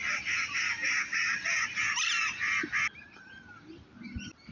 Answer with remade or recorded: recorded